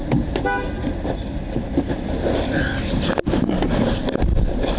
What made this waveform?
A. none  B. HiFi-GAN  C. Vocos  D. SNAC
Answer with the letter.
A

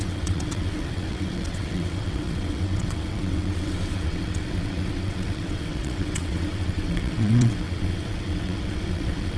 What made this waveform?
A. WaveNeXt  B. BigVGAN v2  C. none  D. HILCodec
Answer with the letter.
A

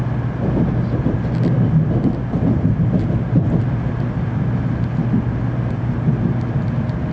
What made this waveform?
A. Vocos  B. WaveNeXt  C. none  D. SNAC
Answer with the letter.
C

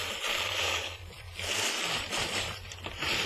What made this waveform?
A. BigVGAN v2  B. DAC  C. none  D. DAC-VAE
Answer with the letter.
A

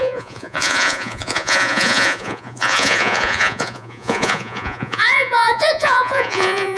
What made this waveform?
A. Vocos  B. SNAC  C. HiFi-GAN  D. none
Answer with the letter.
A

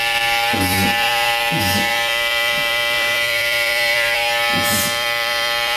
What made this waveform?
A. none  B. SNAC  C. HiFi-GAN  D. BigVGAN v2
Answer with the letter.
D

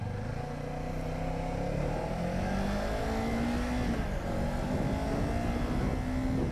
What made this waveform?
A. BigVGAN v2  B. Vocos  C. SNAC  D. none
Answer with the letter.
D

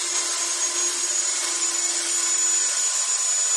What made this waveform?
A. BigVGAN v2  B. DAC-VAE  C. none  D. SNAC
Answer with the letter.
C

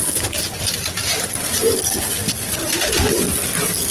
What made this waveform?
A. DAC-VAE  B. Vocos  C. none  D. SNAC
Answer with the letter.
C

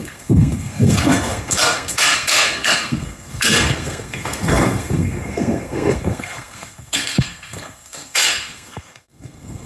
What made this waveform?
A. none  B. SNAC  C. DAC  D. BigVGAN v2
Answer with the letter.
B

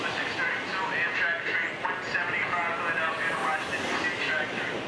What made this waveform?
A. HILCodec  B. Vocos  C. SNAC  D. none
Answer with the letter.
D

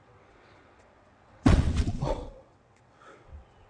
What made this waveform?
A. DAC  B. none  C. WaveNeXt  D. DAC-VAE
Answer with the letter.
C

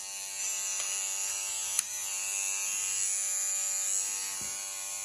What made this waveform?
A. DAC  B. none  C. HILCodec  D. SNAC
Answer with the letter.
B